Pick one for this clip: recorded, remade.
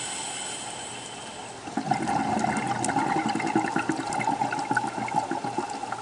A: recorded